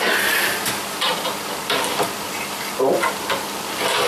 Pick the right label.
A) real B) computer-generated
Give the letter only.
A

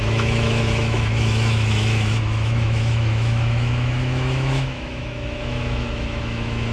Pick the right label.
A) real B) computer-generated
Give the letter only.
B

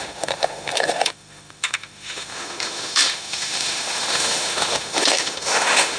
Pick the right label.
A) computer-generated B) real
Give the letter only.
A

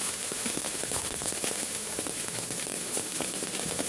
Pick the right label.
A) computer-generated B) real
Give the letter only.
A